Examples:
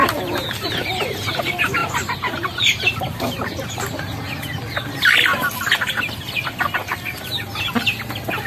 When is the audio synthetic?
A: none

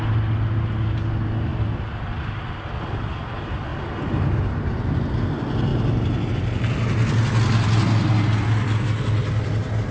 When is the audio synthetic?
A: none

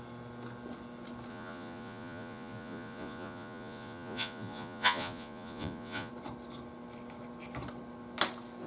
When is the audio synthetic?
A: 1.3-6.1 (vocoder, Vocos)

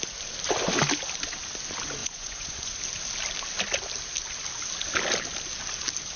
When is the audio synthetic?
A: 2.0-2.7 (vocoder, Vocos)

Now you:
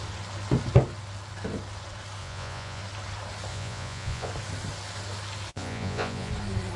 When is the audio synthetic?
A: 2.2-2.8 (vocoder, Vocos); 3.5-4.3; 5.5-6.3

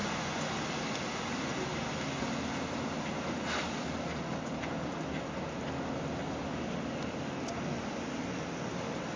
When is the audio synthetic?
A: 0.0-0.5 (vocoder, Vocos)

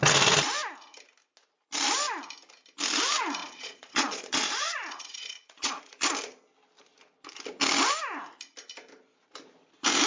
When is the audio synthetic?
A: 3.4-6.0 (vocoder, Vocos)

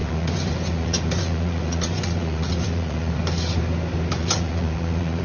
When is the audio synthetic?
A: 0.0-3.2 (vocoder, Vocos); 4.1-5.2